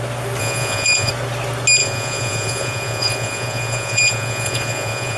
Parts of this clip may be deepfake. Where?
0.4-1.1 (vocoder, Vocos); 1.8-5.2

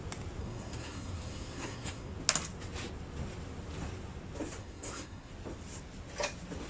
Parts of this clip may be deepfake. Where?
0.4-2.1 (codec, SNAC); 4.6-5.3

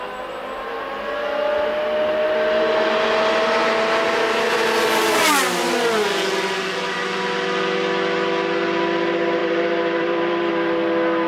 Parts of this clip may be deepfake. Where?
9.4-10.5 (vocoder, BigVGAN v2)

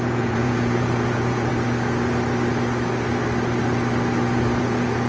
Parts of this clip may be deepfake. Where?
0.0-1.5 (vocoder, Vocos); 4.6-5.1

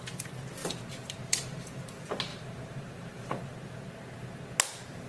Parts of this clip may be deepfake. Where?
0.6-1.8 (vocoder, BigVGAN v2); 2.3-3.4

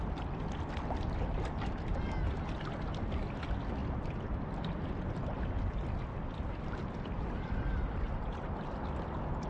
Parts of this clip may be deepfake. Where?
3.8-8.4 (vocoder, BigVGAN v2)

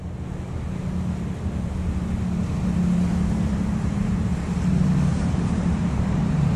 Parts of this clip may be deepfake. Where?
3.1-4.2 (vocoder, BigVGAN v2); 5.1-6.6